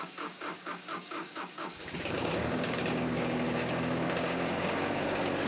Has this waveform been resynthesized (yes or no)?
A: yes